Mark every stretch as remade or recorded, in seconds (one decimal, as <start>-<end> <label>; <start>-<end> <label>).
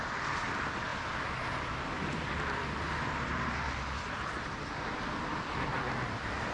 0.0-6.5 recorded